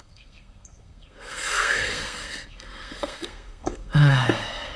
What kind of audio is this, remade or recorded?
remade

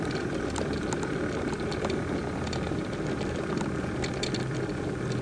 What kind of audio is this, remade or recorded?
recorded